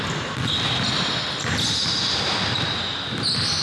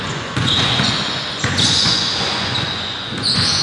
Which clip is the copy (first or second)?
second